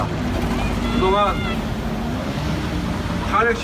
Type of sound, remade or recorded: recorded